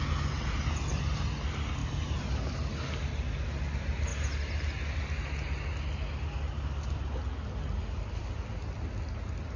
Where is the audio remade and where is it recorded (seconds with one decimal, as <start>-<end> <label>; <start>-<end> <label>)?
0.0-9.6 recorded